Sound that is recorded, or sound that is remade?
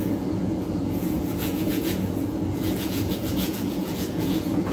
remade